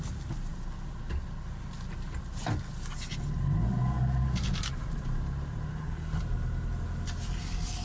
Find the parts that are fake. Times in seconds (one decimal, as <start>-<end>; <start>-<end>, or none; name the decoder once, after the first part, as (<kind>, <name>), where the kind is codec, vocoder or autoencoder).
5.7-6.2 (codec, HILCodec)